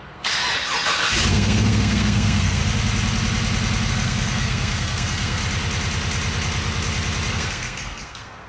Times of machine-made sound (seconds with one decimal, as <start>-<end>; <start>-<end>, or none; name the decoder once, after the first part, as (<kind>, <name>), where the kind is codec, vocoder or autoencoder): 0.0-0.4 (codec, SNAC); 1.3-2.6; 3.9-5.4; 7.3-8.5

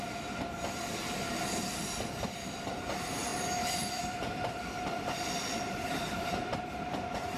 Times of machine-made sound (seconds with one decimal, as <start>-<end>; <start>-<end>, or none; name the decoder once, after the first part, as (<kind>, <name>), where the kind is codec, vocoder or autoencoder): 3.3-6.5 (vocoder, BigVGAN v2)

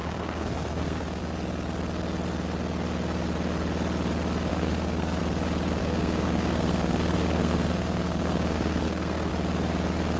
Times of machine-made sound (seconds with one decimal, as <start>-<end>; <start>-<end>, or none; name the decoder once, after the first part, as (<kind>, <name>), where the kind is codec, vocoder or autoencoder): 0.0-1.2 (codec, SNAC); 4.5-5.2; 5.8-9.3

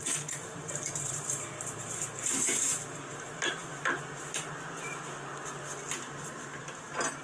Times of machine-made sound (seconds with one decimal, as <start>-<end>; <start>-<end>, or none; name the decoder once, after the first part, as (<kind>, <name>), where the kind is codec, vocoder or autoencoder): 0.5-2.6 (vocoder, BigVGAN v2)